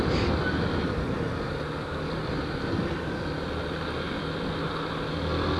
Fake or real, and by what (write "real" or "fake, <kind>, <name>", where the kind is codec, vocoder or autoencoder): real